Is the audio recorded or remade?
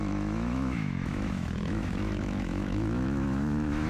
remade